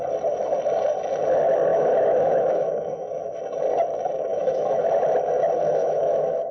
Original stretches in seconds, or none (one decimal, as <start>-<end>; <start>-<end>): 0.0-1.7; 3.4-4.3; 4.8-5.8